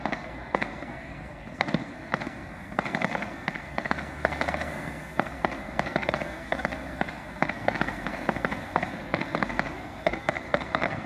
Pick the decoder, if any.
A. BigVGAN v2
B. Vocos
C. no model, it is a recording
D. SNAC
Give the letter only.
D